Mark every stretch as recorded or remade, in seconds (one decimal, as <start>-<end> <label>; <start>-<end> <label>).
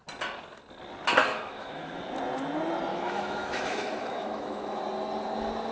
0.0-1.3 recorded; 1.3-2.0 remade; 2.0-2.9 recorded; 2.9-4.8 remade; 4.8-5.7 recorded